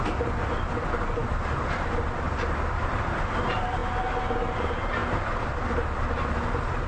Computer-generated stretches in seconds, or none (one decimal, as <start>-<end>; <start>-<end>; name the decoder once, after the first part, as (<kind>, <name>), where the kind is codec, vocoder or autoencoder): none